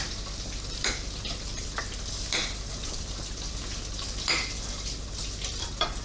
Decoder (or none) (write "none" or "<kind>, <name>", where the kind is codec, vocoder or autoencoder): vocoder, BigVGAN v2